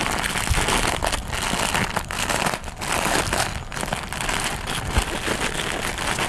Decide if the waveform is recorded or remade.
recorded